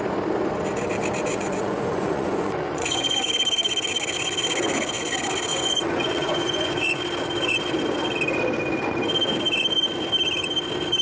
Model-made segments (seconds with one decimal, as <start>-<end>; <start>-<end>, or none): 1.3-3.3; 5.5-7.0